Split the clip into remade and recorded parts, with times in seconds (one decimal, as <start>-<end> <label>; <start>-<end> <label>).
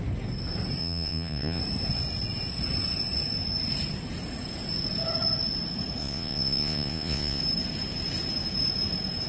0.0-0.8 recorded; 0.8-1.6 remade; 1.6-6.0 recorded; 6.0-7.4 remade; 7.4-9.3 recorded